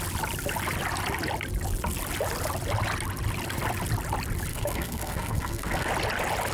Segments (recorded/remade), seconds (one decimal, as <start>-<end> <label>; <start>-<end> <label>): 0.0-4.5 recorded; 4.5-5.9 remade; 5.9-6.5 recorded